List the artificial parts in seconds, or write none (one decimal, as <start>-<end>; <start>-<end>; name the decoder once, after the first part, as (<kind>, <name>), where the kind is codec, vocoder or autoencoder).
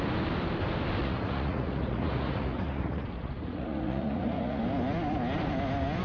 1.0-4.6 (vocoder, Vocos)